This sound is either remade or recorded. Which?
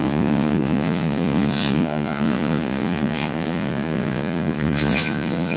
remade